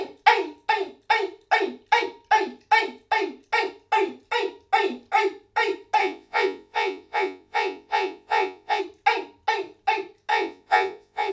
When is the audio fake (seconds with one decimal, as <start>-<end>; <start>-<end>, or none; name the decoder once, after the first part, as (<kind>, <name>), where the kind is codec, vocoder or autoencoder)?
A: 6.0-8.8 (vocoder, Vocos); 10.3-11.3